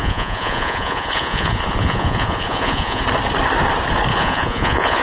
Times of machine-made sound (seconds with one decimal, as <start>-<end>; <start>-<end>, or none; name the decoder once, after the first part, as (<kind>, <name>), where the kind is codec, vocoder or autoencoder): 0.0-3.0 (vocoder, Vocos); 4.1-5.0